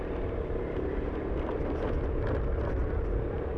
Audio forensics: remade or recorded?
recorded